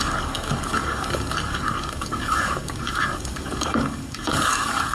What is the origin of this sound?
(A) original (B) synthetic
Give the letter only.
B